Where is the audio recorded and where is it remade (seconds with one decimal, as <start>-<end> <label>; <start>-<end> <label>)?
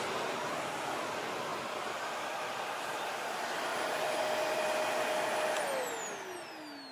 0.0-6.9 recorded